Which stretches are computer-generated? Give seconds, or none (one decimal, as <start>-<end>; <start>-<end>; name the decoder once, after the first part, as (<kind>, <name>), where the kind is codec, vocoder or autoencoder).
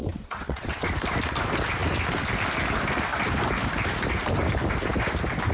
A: 0.0-0.9 (vocoder, WaveNeXt)